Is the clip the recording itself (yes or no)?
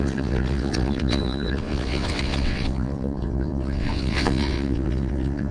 no